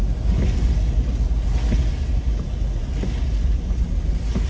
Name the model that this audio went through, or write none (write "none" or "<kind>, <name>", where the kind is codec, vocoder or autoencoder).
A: none